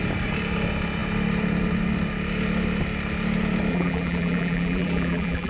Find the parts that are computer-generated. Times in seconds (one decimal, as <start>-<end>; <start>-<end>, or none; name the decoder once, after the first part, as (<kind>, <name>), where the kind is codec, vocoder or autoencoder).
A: 3.7-5.5 (vocoder, BigVGAN v2)